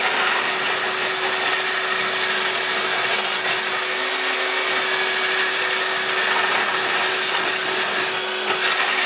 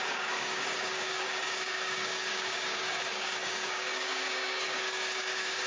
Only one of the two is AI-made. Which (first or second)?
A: second